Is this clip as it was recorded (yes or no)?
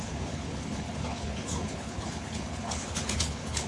no